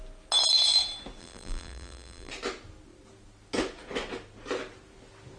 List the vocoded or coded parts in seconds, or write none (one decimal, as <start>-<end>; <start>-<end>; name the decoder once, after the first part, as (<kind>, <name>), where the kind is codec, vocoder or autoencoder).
1.2-2.3 (vocoder, BigVGAN v2)